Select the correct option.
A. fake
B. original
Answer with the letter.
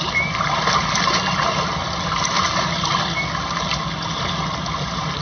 B